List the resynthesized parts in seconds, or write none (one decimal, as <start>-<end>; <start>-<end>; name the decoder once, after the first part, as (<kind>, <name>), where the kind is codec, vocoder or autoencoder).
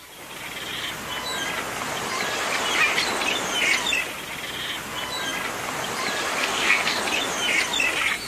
6.4-7.0 (codec, SNAC)